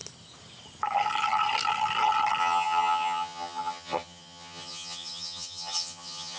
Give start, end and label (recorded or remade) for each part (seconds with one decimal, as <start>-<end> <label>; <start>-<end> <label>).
0.0-2.4 recorded; 2.4-6.4 remade